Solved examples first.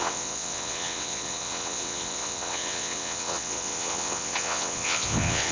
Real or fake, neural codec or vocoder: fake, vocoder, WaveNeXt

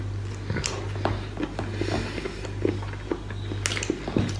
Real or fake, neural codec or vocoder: real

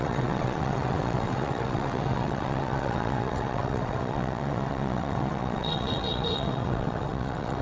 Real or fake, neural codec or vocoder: fake, vocoder, WaveNeXt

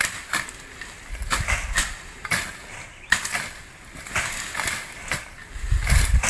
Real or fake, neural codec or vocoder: real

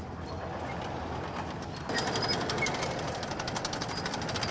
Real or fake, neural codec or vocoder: real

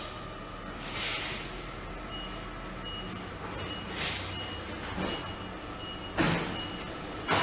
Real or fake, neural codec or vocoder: real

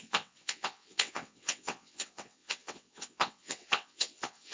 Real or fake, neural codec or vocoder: fake, vocoder, WaveNeXt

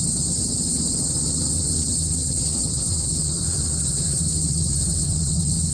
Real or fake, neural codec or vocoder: fake, vocoder, WaveNeXt